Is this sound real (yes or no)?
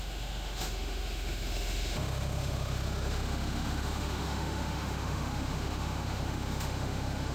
no